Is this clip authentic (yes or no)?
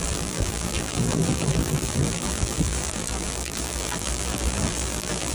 no